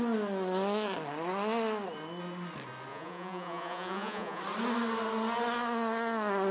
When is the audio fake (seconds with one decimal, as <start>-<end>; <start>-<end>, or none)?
2.9-4.4